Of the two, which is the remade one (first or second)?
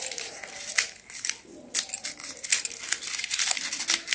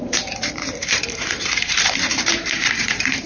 second